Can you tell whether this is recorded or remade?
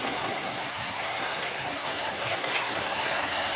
remade